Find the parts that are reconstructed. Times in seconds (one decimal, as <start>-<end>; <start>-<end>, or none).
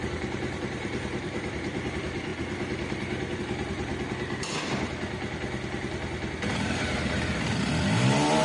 0.0-2.3; 3.4-3.9